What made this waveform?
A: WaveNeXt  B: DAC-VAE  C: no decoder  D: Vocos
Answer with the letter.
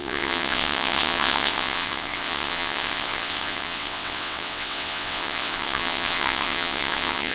A